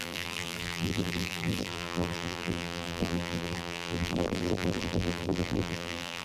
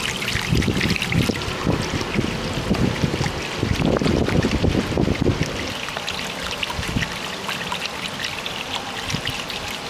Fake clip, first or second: first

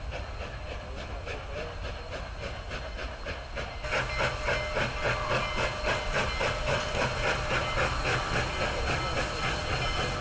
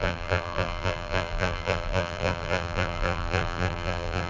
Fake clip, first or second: second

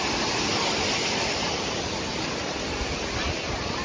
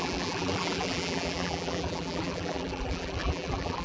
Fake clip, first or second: second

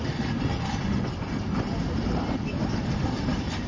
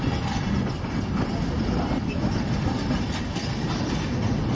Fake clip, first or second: first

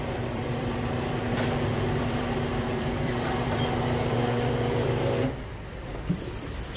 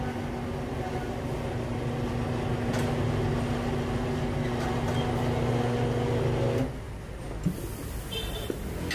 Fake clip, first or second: first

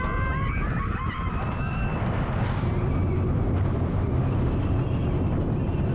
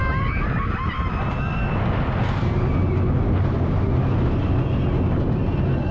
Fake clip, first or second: first